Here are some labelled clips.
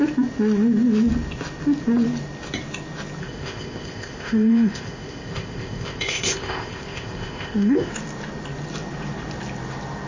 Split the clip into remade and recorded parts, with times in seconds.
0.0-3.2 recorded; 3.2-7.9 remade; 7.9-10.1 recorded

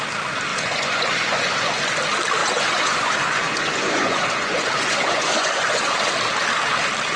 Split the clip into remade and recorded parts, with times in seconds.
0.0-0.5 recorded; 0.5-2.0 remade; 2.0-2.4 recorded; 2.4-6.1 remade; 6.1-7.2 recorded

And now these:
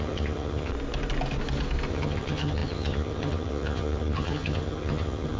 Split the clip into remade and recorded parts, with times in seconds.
0.0-0.7 remade; 0.7-1.9 recorded; 1.9-5.4 remade

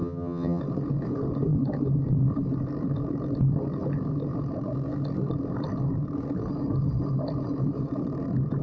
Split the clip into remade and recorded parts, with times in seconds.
0.0-0.6 remade; 0.6-8.6 recorded